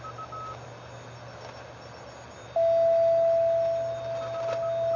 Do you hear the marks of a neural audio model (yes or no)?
no